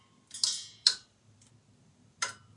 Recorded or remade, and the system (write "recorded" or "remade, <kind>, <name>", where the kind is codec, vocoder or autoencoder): recorded